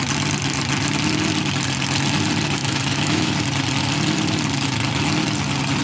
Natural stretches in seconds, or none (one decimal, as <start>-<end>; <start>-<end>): 0.0-2.6; 3.3-5.8